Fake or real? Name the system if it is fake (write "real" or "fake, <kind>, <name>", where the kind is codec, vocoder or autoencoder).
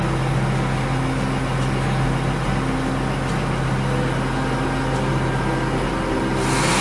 real